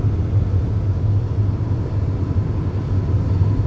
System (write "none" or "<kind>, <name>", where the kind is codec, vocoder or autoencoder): none